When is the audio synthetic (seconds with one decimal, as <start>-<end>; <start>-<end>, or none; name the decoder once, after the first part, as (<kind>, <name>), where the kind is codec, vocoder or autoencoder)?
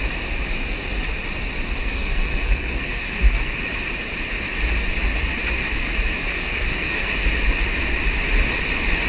1.8-3.6 (codec, SNAC); 6.3-7.1